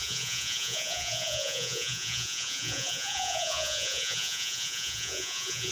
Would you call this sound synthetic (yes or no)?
yes